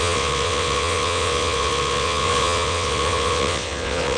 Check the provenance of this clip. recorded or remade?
remade